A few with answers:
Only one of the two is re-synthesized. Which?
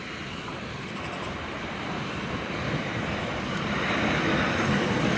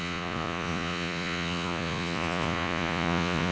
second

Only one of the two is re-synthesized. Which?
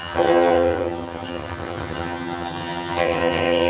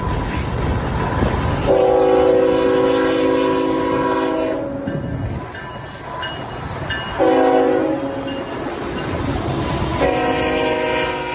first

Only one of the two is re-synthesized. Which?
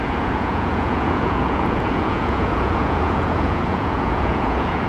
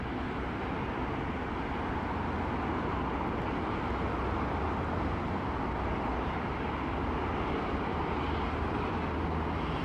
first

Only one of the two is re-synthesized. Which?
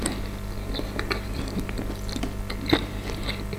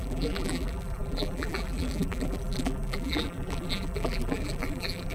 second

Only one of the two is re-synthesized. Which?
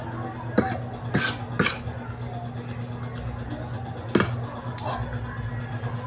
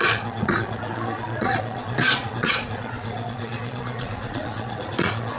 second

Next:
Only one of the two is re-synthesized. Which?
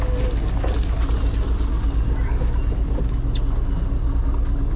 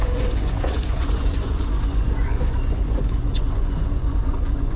second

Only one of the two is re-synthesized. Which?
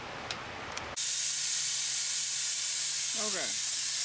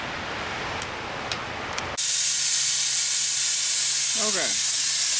first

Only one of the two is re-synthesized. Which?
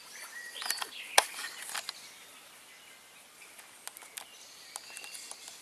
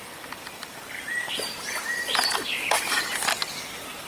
second